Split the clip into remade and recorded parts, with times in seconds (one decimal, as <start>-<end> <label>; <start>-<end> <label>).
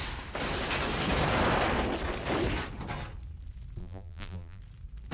0.0-3.8 recorded; 3.8-4.6 remade; 4.6-5.1 recorded